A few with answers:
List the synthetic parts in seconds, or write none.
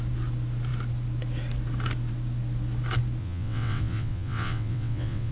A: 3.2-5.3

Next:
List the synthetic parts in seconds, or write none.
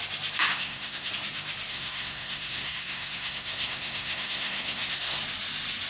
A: 0.5-1.1; 1.7-5.2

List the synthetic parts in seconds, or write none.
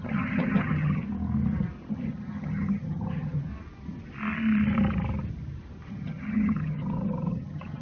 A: 0.0-1.0; 1.9-3.5; 5.9-7.8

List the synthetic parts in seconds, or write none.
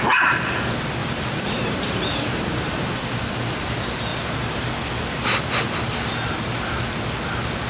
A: 1.0-3.0; 4.1-4.7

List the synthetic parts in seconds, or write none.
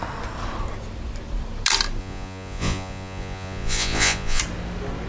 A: 2.0-4.4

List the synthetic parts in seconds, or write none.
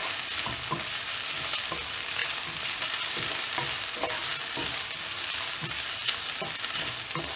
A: none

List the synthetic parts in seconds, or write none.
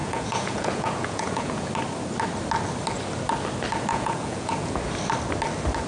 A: 0.0-1.7; 3.9-4.8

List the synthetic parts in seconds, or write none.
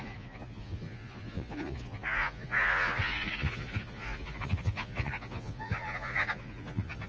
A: 0.0-7.1